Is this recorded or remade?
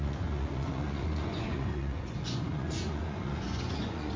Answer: remade